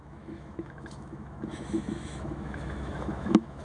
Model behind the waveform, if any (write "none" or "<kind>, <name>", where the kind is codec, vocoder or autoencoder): autoencoder, DAC-VAE